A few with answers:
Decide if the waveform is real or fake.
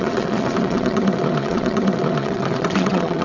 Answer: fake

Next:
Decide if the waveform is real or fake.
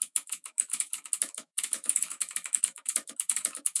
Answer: fake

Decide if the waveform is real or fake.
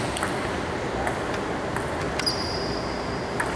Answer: real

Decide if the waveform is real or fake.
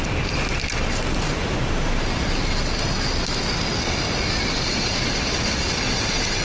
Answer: real